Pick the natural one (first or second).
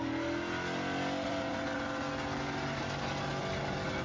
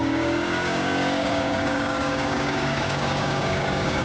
first